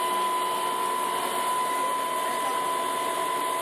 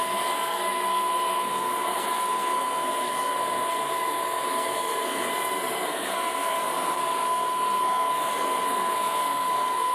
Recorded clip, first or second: first